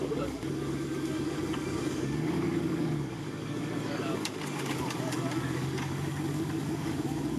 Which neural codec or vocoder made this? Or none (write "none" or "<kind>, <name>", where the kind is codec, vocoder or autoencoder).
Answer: codec, DAC